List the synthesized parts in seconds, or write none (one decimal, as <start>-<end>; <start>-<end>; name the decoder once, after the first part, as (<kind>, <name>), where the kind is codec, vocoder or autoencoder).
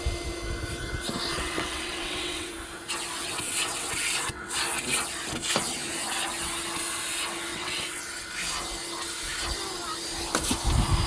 1.3-2.5 (vocoder, WaveNeXt); 3.2-4.5; 7.5-8.0